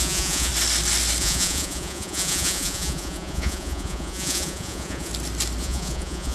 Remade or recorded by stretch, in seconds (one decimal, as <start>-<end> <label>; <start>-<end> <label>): 0.0-0.5 remade; 0.5-1.2 recorded; 1.2-5.1 remade; 5.1-5.6 recorded; 5.6-6.3 remade